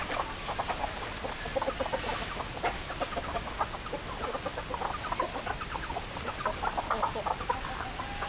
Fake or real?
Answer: real